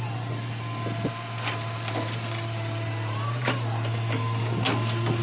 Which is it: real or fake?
real